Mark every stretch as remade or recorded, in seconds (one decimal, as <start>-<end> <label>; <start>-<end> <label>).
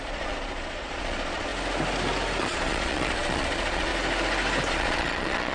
0.0-1.5 remade; 1.5-2.4 recorded; 2.4-3.9 remade; 3.9-4.7 recorded; 4.7-5.5 remade